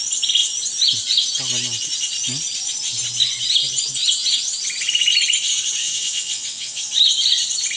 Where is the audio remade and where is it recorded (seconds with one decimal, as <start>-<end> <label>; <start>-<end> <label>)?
0.0-5.8 recorded; 5.8-6.9 remade; 6.9-7.8 recorded